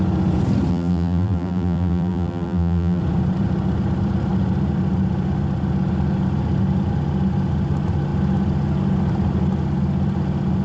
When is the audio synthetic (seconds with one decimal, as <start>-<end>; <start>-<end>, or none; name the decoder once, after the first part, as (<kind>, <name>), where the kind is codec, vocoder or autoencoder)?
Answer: 0.7-3.0 (vocoder, BigVGAN v2)